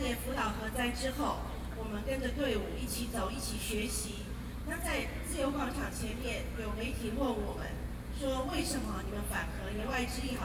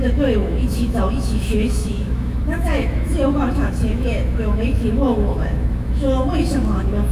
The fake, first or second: second